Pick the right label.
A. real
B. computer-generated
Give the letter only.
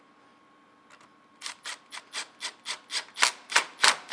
A